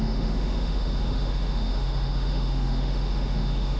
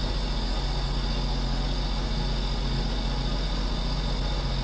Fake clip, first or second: first